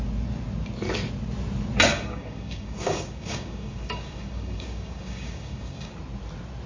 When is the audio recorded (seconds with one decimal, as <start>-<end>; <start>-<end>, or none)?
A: 0.0-1.9; 5.9-6.7